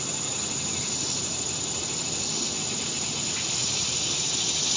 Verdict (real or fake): real